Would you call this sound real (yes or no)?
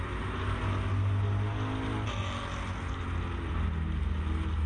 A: yes